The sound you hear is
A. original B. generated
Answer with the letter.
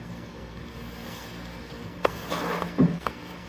B